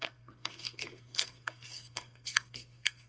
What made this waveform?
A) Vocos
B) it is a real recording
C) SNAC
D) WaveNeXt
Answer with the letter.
C